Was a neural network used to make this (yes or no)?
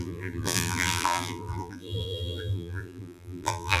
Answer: yes